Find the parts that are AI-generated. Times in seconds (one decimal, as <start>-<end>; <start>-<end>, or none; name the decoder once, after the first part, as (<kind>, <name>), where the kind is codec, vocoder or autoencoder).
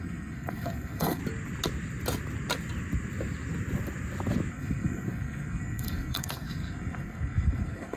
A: 0.0-1.2 (codec, SNAC); 4.5-8.0